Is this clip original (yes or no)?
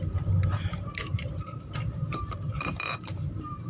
no